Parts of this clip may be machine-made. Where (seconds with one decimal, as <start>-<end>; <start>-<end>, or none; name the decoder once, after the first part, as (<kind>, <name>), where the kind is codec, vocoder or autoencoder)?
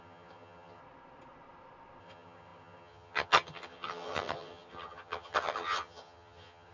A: 0.0-0.8 (vocoder, HiFi-GAN); 2.0-6.7